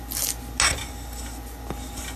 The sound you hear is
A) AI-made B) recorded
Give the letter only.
B